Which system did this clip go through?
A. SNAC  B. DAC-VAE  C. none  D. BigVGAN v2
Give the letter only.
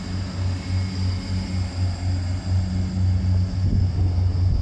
C